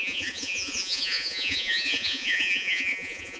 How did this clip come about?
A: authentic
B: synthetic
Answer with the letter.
B